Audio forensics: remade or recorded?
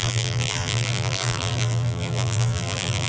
remade